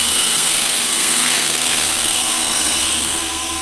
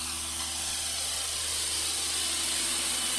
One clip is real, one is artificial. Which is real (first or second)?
second